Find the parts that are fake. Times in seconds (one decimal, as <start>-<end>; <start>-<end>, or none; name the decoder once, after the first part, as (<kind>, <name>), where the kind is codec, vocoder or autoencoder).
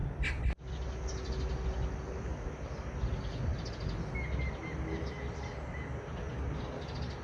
none